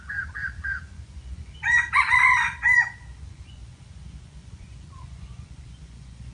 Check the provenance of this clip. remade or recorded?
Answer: remade